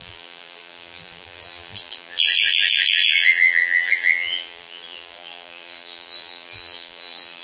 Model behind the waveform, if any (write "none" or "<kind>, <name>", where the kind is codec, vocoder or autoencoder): vocoder, BigVGAN v2